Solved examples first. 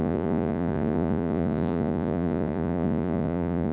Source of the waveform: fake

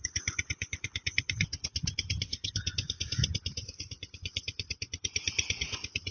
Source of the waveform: fake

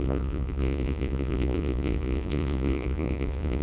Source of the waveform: fake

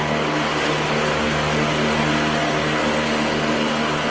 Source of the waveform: real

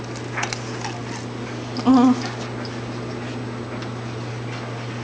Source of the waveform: real